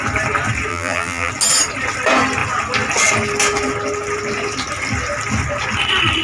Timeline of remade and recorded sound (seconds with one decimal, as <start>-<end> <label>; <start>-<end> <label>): 0.0-0.7 recorded; 0.7-1.3 remade; 1.3-6.2 recorded